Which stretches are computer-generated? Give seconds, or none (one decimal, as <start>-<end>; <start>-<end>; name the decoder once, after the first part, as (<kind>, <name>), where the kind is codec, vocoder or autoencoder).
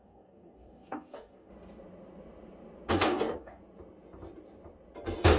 0.0-1.5 (codec, DAC); 2.9-3.6